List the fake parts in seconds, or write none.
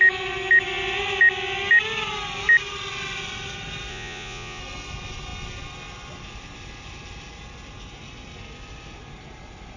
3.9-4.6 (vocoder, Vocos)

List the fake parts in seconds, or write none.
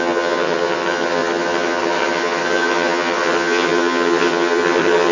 0.0-5.1 (vocoder, HiFi-GAN)